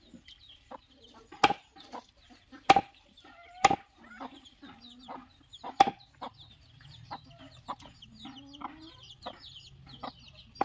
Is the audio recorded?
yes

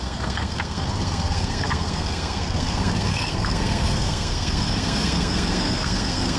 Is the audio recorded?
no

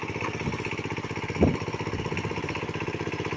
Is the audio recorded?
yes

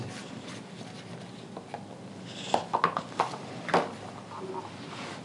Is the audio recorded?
yes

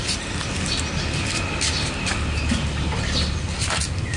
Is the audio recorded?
yes